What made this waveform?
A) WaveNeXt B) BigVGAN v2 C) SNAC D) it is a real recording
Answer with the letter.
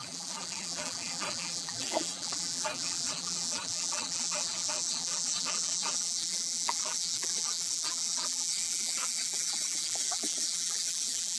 B